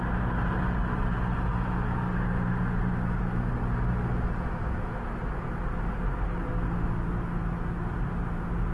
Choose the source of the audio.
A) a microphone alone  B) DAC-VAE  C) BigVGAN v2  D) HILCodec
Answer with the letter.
A